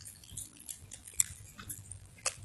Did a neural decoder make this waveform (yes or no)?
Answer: yes